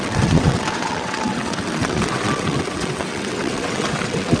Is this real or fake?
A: fake